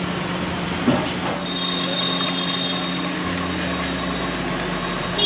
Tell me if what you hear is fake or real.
real